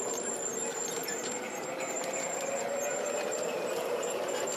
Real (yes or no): no